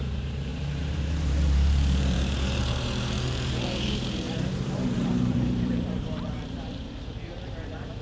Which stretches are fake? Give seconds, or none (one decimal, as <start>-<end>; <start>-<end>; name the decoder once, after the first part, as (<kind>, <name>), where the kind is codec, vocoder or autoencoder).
0.0-8.0 (vocoder, BigVGAN v2)